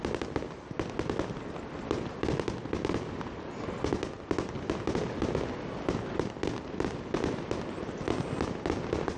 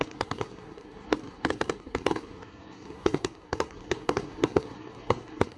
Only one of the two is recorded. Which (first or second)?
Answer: first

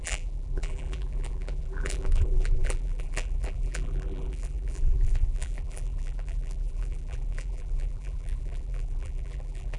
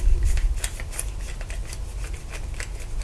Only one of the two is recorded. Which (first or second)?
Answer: second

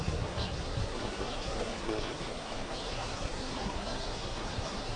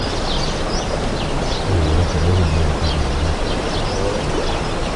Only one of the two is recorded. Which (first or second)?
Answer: second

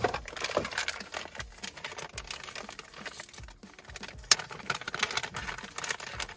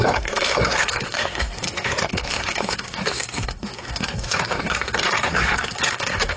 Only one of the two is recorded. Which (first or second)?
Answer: first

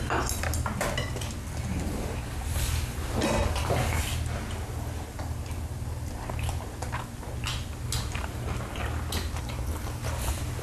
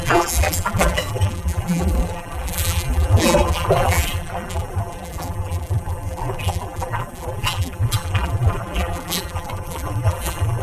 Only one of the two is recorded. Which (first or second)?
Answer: first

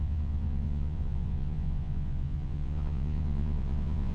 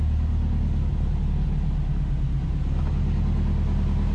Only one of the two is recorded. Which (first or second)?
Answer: second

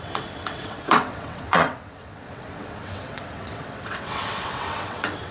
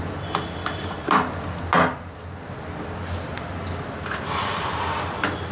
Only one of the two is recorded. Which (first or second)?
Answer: second